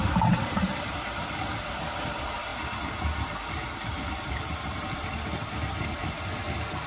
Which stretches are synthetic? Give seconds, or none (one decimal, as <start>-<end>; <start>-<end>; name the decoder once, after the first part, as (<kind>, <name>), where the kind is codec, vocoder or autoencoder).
0.0-0.7 (vocoder, BigVGAN v2)